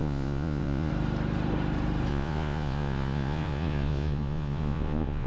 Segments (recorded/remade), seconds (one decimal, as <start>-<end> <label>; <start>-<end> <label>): 0.0-0.9 remade; 0.9-2.1 recorded; 2.1-5.3 remade